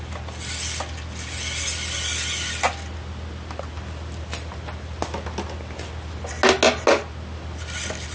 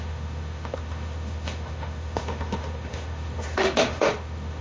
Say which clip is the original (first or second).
first